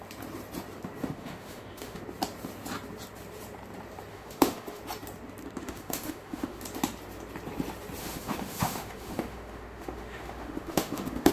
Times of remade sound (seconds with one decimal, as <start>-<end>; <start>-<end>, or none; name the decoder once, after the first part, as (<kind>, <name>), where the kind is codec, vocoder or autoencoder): 1.0-2.0 (autoencoder, DAC-VAE); 4.1-4.8; 5.6-6.6; 8.0-11.3